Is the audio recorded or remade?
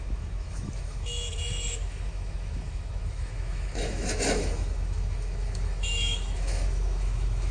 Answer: remade